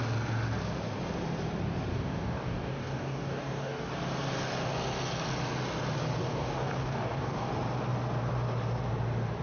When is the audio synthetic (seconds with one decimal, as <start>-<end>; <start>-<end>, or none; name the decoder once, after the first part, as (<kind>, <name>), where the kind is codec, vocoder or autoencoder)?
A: 1.9-3.9 (codec, DAC); 6.2-7.5